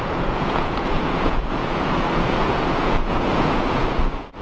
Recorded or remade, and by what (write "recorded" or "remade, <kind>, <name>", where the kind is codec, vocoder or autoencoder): remade, vocoder, Vocos